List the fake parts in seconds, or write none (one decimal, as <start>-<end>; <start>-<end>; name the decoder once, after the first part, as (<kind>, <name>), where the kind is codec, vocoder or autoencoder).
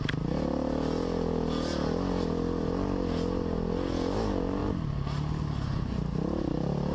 none